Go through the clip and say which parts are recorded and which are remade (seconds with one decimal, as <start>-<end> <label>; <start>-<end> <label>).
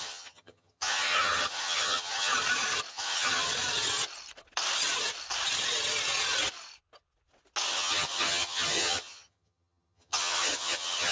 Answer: 0.0-2.3 remade; 2.3-2.9 recorded; 2.9-3.5 remade; 3.5-7.7 recorded; 7.7-11.1 remade